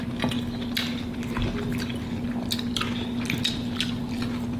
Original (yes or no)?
yes